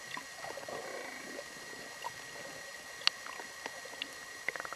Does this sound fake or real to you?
real